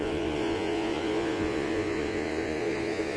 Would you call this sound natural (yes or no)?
no